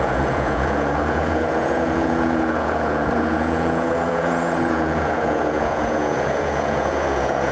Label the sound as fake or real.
fake